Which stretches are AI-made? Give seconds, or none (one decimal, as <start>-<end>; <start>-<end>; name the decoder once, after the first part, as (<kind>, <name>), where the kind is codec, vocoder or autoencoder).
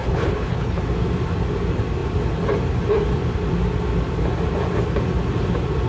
0.0-0.8 (codec, HILCodec)